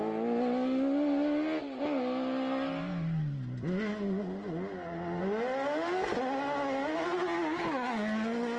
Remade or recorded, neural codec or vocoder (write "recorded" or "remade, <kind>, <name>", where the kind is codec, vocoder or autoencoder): recorded